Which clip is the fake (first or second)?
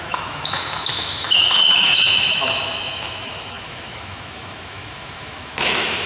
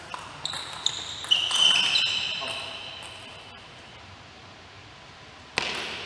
first